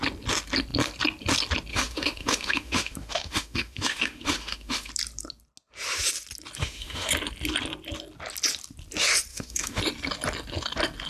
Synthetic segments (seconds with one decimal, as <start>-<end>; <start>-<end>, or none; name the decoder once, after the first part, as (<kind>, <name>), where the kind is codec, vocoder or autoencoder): 1.7-4.9 (autoencoder, DAC-VAE); 6.6-7.1; 9.3-9.8